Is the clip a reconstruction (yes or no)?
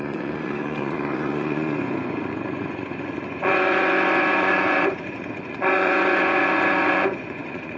yes